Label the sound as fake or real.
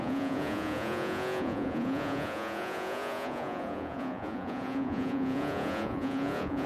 fake